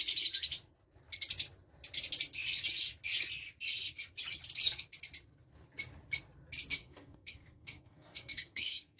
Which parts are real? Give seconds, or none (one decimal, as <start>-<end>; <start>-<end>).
0.0-6.8